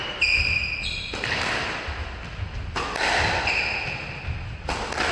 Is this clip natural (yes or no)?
yes